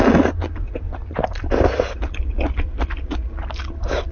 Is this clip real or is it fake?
real